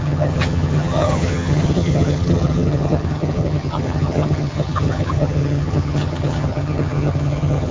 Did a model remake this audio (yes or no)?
yes